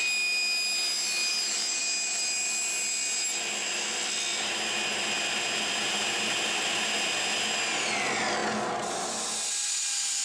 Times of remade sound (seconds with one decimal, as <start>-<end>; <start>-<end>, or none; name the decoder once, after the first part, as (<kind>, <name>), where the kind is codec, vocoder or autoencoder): 1.3-1.8 (vocoder, BigVGAN v2)